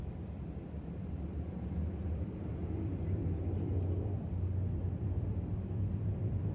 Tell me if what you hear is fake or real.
fake